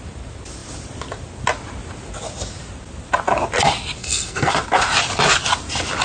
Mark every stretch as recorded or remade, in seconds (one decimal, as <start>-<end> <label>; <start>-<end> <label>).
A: 0.0-4.0 recorded; 4.0-4.5 remade; 4.5-6.0 recorded